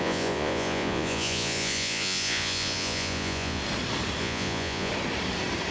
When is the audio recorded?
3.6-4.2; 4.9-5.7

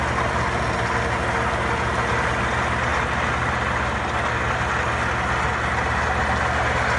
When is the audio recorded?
0.0-7.0

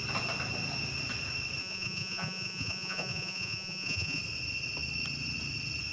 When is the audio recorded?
0.0-1.6; 4.2-5.9

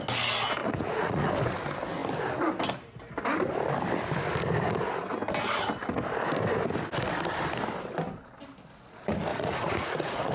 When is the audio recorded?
0.0-0.6; 1.3-9.3

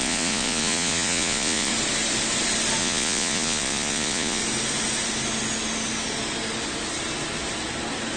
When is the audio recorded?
1.7-2.8; 4.4-8.2

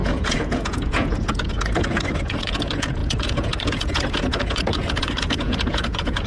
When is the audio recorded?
none

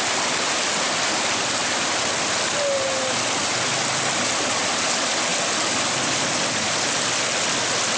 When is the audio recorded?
0.0-8.0